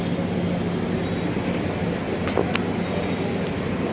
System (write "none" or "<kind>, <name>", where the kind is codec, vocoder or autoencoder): none